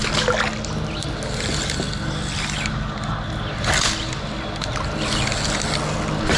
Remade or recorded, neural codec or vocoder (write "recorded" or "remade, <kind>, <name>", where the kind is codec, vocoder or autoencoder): recorded